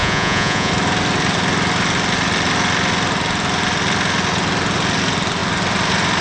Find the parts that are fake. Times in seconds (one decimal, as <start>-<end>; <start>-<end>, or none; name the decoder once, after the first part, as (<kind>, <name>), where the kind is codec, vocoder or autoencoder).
0.0-0.7 (vocoder, Vocos)